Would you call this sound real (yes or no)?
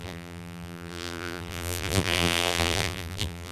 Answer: no